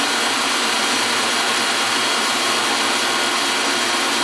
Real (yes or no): yes